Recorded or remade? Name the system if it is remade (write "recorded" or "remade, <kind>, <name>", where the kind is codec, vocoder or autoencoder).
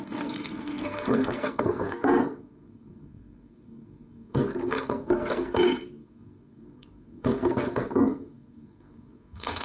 remade, codec, SNAC